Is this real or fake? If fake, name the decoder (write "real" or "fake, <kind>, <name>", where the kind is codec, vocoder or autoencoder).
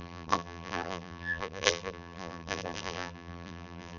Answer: fake, vocoder, BigVGAN v2